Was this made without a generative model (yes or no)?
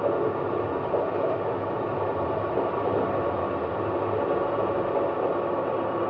yes